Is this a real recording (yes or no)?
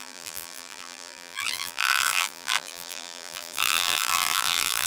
no